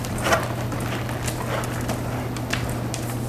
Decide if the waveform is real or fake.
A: real